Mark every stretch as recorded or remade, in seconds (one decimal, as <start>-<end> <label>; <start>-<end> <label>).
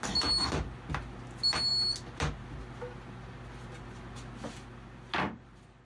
0.0-5.8 recorded